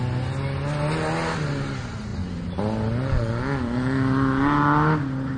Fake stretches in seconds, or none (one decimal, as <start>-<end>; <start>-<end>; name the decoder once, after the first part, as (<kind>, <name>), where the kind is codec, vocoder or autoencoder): none